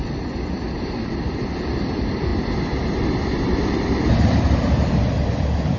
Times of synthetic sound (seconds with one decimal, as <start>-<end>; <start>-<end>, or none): 0.0-2.3; 3.4-5.8